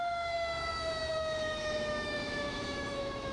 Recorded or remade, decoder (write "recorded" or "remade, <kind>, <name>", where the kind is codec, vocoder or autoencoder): remade, autoencoder, DAC-VAE